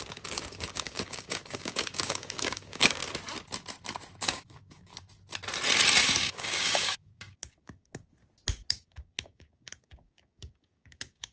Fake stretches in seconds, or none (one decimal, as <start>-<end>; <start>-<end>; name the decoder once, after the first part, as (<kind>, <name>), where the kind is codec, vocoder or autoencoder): 0.0-3.0 (codec, DAC); 4.2-4.9; 6.0-8.1; 8.7-11.3

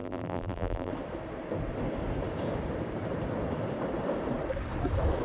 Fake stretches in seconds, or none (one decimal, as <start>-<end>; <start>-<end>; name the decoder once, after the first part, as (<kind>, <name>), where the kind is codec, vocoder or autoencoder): 0.0-0.9 (vocoder, BigVGAN v2)